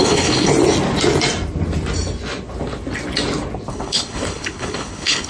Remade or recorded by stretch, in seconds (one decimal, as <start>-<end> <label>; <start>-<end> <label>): 0.0-0.5 remade; 0.5-3.7 recorded; 3.7-5.3 remade